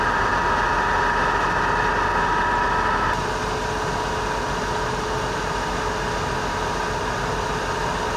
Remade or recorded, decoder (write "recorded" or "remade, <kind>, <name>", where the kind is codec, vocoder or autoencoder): recorded